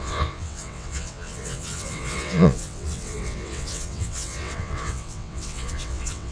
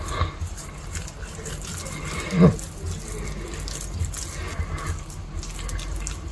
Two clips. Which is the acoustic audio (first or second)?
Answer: second